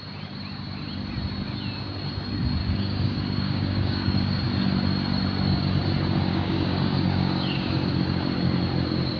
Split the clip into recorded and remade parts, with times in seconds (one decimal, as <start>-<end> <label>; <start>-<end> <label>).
0.0-2.6 recorded; 2.6-4.4 remade; 4.4-6.3 recorded; 6.3-7.9 remade; 7.9-9.2 recorded

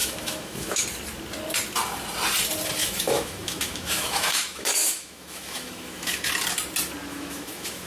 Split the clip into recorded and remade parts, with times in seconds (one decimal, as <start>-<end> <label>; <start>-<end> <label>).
0.0-0.8 remade; 0.8-2.8 recorded; 2.8-6.3 remade; 6.3-7.1 recorded; 7.1-7.9 remade

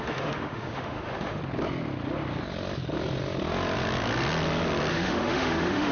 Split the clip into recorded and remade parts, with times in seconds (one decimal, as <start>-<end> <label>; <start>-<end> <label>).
0.0-1.4 remade; 1.4-4.9 recorded; 4.9-5.9 remade

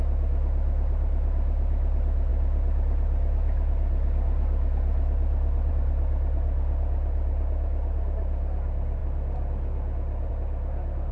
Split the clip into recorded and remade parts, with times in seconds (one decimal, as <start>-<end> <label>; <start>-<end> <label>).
0.0-11.1 recorded

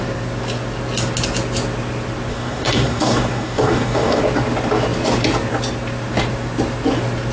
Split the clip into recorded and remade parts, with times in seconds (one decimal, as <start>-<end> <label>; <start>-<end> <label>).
0.0-2.3 recorded; 2.3-4.2 remade; 4.2-7.3 recorded

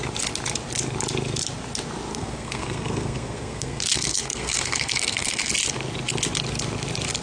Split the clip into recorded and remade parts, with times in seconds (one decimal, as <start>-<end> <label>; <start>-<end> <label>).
0.0-2.1 recorded; 2.1-5.5 remade; 5.5-7.2 recorded

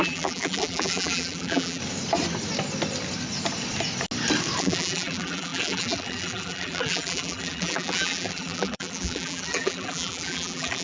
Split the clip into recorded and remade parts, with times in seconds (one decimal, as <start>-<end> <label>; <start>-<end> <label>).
0.0-1.8 remade; 1.8-4.6 recorded; 4.6-10.8 remade

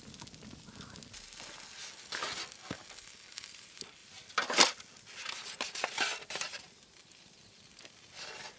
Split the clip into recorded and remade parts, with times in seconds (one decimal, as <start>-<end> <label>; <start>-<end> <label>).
0.0-8.6 recorded